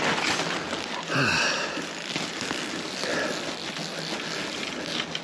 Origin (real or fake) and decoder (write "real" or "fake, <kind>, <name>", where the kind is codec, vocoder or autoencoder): real